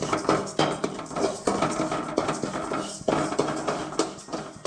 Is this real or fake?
real